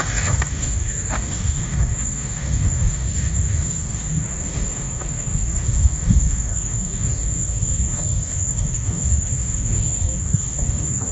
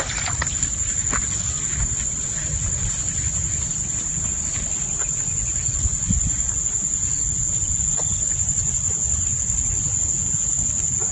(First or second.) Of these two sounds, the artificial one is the first